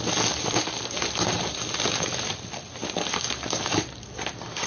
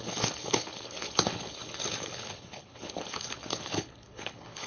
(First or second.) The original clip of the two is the first